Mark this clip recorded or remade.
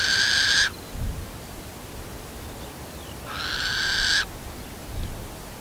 recorded